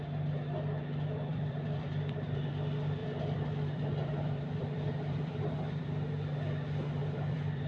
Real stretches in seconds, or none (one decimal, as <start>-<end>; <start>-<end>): 0.0-1.3; 2.5-3.0; 5.8-7.0